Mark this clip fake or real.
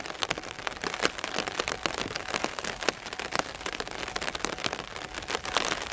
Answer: real